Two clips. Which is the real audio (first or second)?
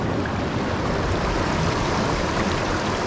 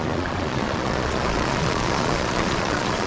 first